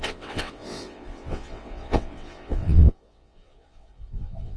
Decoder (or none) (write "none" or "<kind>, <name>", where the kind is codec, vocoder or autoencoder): vocoder, WaveNeXt